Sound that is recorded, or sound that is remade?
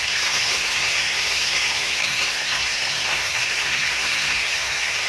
remade